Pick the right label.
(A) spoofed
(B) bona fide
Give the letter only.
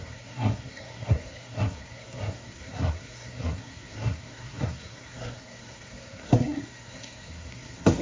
A